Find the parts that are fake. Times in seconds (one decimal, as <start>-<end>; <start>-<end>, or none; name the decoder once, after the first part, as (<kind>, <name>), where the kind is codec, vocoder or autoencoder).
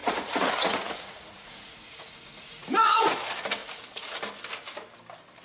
0.0-3.2 (vocoder, Vocos); 3.6-4.2